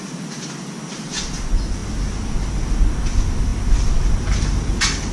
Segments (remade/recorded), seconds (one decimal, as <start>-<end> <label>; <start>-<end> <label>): 0.0-5.1 recorded